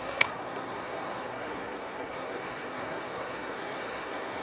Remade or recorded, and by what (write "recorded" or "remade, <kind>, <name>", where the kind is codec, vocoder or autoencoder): remade, codec, SNAC